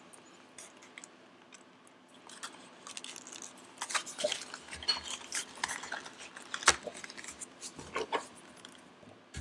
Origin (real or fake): real